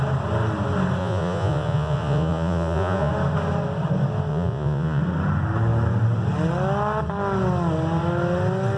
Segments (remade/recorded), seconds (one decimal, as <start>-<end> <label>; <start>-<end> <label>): 0.0-1.0 recorded; 1.0-3.1 remade; 3.1-4.3 recorded; 4.3-5.0 remade; 5.0-8.8 recorded